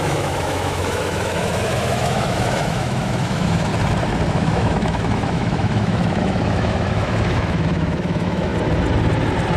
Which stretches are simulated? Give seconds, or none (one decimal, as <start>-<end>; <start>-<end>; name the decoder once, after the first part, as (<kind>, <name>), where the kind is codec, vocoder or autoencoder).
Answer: 0.0-3.7 (autoencoder, DAC-VAE); 4.3-8.5